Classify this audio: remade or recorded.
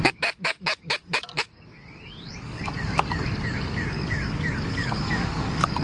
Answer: remade